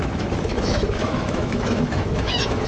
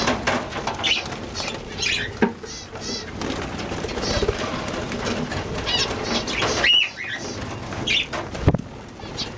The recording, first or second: second